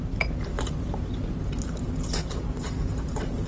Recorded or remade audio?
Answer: recorded